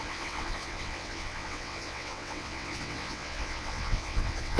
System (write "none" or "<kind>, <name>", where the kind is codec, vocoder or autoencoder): vocoder, WaveNeXt